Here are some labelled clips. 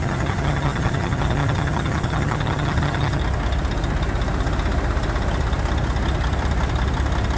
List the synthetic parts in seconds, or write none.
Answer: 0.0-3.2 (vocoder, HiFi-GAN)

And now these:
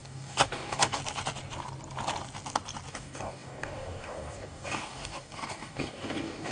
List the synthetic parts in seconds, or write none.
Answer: 0.0-1.0 (codec, DAC); 2.9-6.5

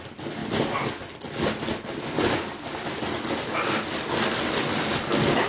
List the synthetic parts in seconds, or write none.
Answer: none

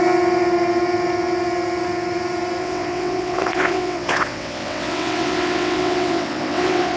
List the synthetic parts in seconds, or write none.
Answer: 2.6-7.0 (vocoder, WaveNeXt)

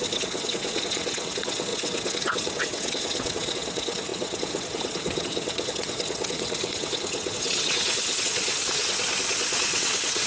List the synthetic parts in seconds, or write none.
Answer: 0.0-10.3 (vocoder, WaveNeXt)

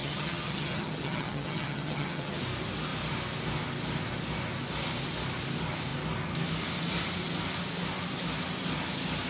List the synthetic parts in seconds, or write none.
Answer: 0.0-2.4 (vocoder, HiFi-GAN)